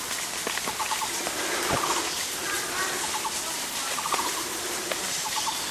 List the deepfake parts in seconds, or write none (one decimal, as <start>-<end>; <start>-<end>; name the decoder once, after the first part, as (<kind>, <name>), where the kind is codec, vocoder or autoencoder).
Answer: 0.8-4.2 (vocoder, BigVGAN v2)